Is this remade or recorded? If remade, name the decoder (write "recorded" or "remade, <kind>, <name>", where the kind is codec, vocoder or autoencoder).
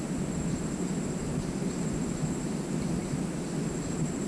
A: recorded